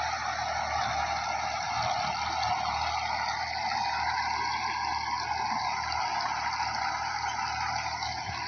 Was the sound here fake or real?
real